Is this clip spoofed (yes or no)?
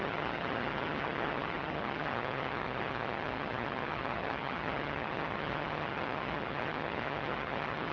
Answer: yes